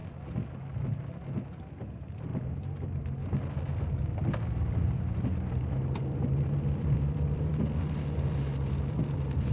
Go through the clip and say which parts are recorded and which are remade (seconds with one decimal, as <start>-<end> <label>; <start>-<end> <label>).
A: 0.0-1.6 recorded; 1.6-2.3 remade; 2.3-4.2 recorded; 4.2-9.5 remade